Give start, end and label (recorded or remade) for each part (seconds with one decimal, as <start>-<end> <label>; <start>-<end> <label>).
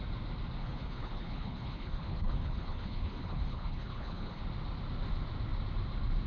0.0-0.6 recorded; 0.6-4.4 remade; 4.4-6.3 recorded